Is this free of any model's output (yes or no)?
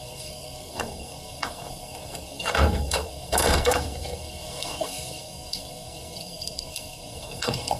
no